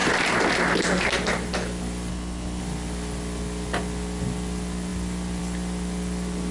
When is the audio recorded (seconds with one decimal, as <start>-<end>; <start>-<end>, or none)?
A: 0.0-2.1; 2.6-6.5